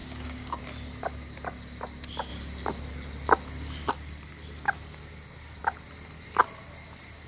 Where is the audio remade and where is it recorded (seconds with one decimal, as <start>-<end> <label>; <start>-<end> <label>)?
0.0-0.6 remade; 0.6-7.3 recorded